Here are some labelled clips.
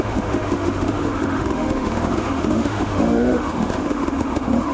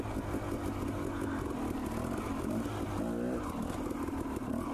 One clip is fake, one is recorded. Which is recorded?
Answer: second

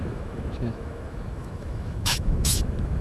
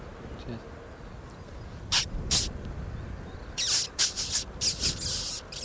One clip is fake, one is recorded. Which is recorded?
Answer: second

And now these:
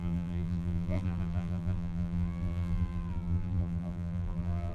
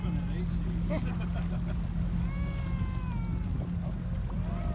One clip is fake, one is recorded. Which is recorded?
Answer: second